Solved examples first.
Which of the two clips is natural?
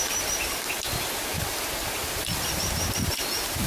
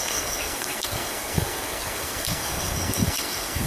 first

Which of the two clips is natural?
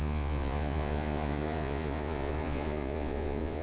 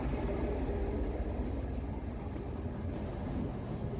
second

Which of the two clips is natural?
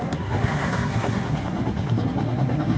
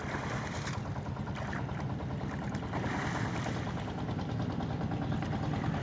second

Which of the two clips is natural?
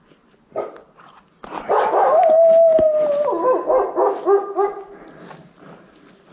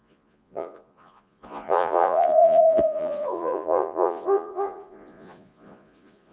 first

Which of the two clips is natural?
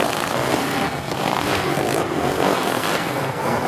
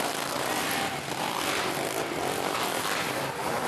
second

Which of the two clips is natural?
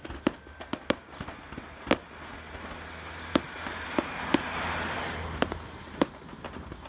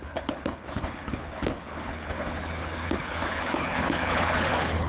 first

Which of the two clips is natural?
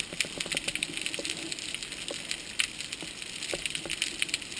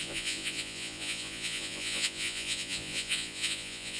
first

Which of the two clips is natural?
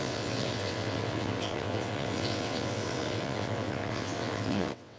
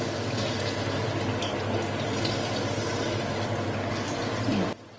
second